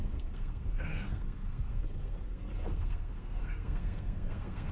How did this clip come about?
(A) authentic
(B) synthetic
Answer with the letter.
B